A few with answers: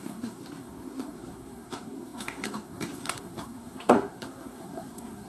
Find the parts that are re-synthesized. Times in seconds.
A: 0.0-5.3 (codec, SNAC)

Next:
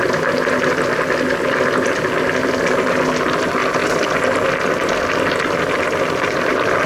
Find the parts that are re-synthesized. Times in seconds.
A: none